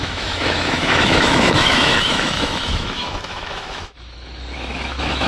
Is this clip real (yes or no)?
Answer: no